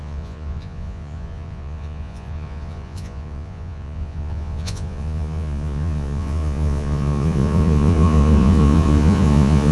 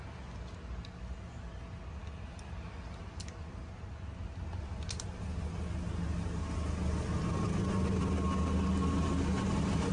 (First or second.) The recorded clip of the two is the second